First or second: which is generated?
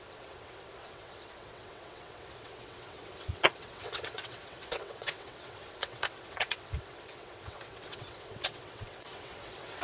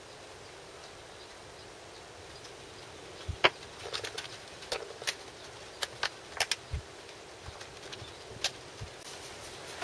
first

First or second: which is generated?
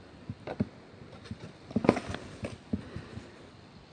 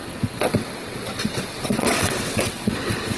second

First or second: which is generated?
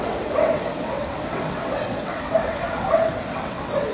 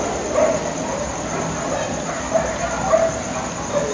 first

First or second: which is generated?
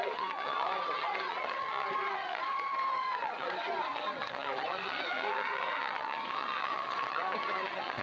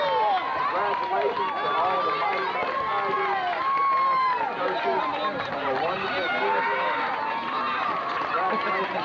first